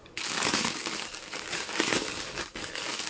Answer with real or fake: fake